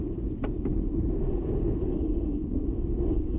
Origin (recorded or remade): recorded